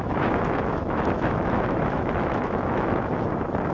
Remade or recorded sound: remade